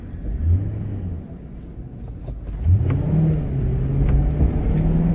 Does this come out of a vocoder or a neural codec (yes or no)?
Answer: no